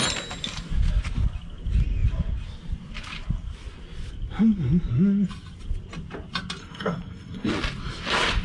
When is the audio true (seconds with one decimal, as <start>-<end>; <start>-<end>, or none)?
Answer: 0.0-6.6; 7.5-8.4